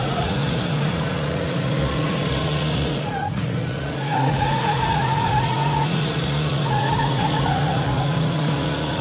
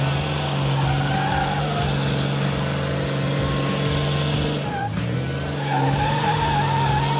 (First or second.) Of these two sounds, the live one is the second